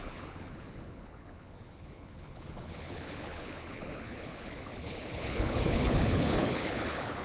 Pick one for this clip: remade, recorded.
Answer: remade